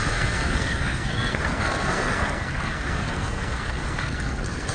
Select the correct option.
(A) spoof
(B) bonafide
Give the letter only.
A